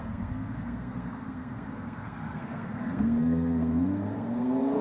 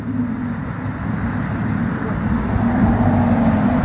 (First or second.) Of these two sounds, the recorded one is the second